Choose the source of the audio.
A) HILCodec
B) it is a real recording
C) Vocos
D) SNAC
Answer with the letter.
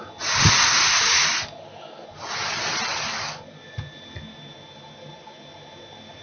B